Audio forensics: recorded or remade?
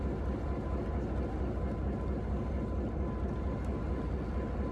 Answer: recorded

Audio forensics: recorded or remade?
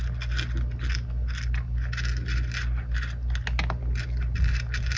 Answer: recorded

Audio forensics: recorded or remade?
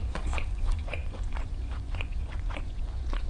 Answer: remade